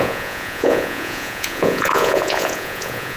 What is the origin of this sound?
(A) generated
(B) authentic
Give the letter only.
A